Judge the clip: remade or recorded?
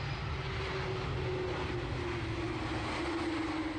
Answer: recorded